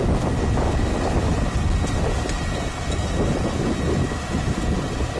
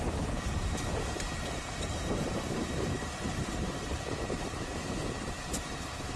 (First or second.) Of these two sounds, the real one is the first